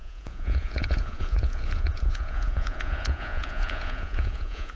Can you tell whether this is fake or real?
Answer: fake